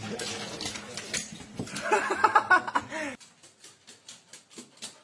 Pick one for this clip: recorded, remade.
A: recorded